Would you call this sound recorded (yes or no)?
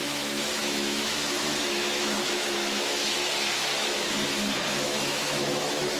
no